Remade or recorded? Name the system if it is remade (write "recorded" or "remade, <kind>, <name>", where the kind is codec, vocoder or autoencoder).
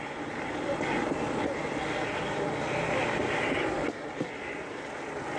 recorded